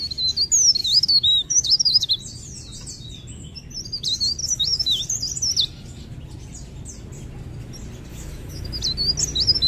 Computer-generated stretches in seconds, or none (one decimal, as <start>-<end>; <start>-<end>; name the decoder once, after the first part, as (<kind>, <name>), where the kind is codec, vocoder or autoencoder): 0.8-2.2 (autoencoder, DAC-VAE); 4.4-5.0; 8.1-8.8